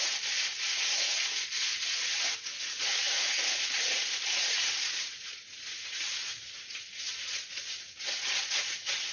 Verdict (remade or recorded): remade